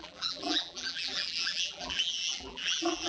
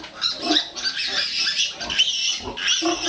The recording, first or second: second